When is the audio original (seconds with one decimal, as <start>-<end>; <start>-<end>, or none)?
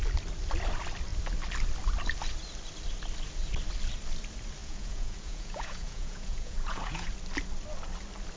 0.0-4.6; 7.1-8.4